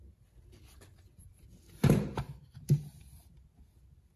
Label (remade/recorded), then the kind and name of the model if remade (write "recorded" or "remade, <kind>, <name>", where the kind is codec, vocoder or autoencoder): recorded